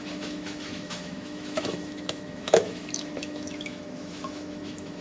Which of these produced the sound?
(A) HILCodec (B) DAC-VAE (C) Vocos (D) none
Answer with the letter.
B